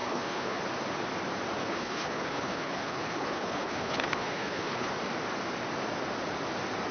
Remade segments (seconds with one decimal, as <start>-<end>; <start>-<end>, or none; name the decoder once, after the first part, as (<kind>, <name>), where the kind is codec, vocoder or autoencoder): 0.0-0.6 (codec, HILCodec); 1.6-4.9